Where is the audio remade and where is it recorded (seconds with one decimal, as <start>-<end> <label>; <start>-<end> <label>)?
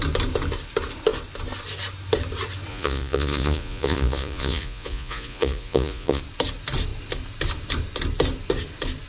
0.0-2.7 recorded; 2.7-6.2 remade; 6.2-9.1 recorded